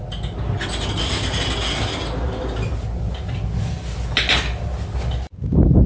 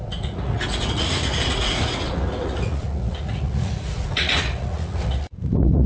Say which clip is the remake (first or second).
second